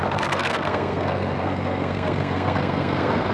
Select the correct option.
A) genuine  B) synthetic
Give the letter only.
B